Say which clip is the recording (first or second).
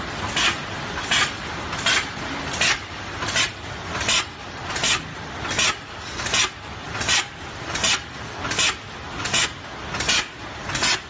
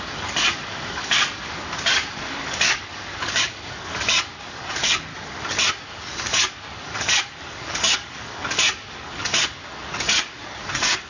first